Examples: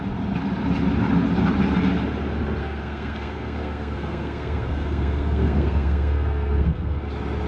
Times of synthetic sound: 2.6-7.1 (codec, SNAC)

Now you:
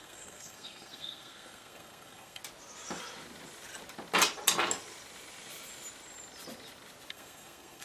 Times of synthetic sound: 0.0-2.4 (codec, SNAC); 7.1-7.8

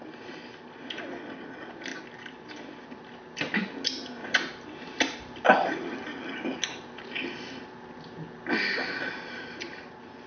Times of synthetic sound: none

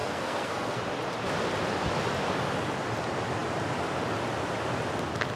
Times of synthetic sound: 0.0-0.8 (codec, SNAC)

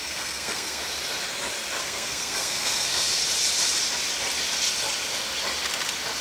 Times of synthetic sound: 0.0-0.8 (codec, SNAC); 1.8-3.2

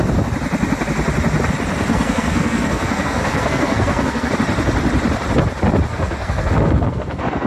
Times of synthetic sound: 1.9-4.3 (codec, SNAC); 5.9-7.5